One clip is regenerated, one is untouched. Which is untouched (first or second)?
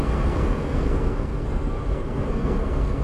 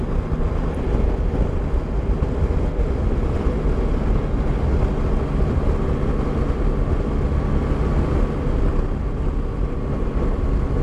second